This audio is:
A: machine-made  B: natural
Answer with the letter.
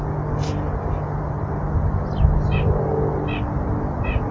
B